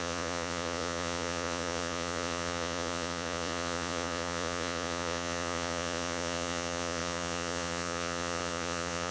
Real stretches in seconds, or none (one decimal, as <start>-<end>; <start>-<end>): none

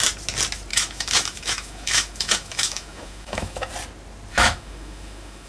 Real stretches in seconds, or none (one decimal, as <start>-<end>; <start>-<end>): 0.0-0.7; 3.7-4.3